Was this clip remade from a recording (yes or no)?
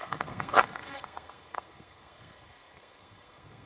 yes